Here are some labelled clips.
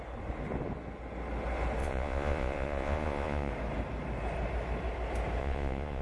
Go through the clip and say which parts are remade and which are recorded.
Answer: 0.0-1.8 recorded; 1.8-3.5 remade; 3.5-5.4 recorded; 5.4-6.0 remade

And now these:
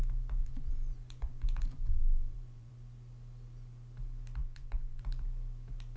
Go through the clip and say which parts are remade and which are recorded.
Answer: 0.0-0.4 recorded; 0.4-2.7 remade; 2.7-4.4 recorded; 4.4-5.0 remade; 5.0-6.0 recorded

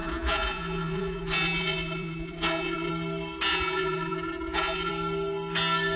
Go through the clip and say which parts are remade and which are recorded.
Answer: 0.0-2.9 remade; 2.9-3.5 recorded; 3.5-4.9 remade; 4.9-6.0 recorded

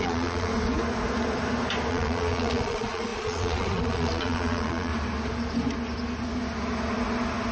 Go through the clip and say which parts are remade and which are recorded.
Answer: 0.0-0.5 remade; 0.5-1.9 recorded; 1.9-4.9 remade; 4.9-7.5 recorded